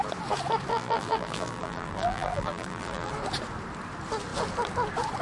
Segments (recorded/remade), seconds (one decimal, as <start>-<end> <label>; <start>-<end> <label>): 0.0-0.7 recorded; 0.7-3.1 remade; 3.1-5.2 recorded